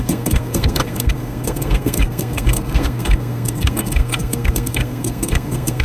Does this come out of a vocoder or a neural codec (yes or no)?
yes